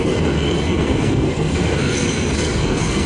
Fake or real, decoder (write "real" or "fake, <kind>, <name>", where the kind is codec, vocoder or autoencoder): fake, codec, SNAC